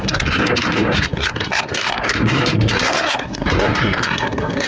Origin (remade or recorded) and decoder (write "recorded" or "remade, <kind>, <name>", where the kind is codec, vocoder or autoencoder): remade, codec, SNAC